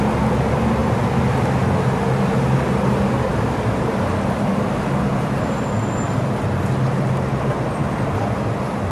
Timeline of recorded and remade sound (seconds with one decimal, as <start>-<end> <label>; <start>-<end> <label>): 0.0-8.9 recorded